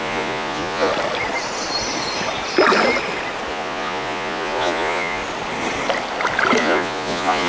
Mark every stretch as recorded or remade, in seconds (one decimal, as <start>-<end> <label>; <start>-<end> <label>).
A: 0.0-0.9 remade; 0.9-3.5 recorded; 3.5-5.2 remade; 5.2-6.6 recorded; 6.6-7.5 remade